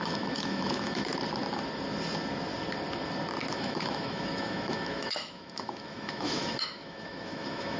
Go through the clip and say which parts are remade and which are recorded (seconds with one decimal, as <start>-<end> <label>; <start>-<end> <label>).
0.0-1.1 remade; 1.1-3.5 recorded; 3.5-7.8 remade